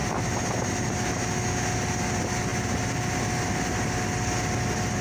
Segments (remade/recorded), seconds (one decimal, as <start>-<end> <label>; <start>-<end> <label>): 0.0-5.0 recorded